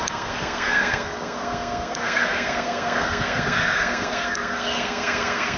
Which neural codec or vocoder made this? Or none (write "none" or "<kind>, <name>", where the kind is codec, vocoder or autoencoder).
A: codec, SNAC